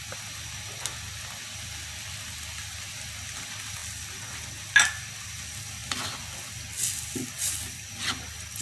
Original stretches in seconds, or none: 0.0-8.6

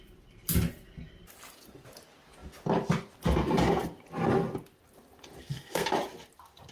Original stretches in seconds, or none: 0.0-5.4; 5.9-6.7

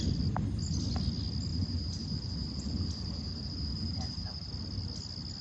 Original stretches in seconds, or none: 0.0-1.5; 4.5-5.4

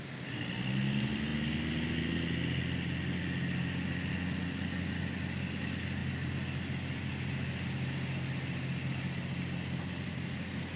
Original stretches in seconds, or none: 0.0-10.8

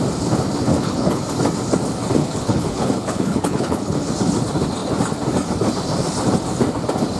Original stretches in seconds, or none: 0.0-0.7; 1.2-2.2; 4.1-7.2

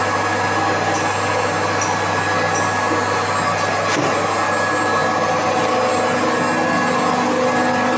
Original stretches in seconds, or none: 0.0-8.0

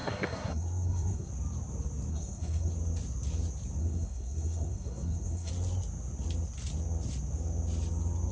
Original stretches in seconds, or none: 1.3-2.1; 2.7-3.8; 5.5-8.3